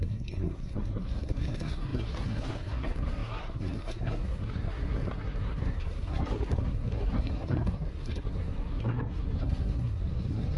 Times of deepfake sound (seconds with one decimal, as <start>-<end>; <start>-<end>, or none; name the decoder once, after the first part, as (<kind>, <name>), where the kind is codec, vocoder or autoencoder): 0.0-10.6 (codec, SNAC)